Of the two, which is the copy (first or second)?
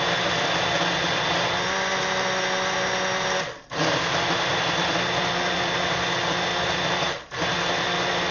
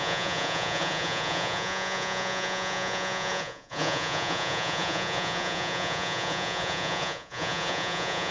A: second